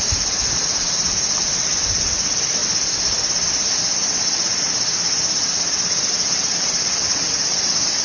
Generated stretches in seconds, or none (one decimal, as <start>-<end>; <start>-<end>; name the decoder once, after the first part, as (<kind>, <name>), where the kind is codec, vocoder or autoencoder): 0.0-2.6 (vocoder, BigVGAN v2); 6.1-8.0